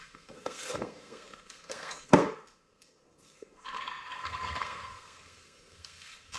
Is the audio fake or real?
fake